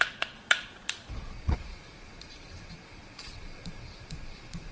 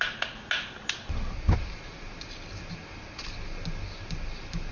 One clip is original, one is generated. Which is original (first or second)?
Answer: second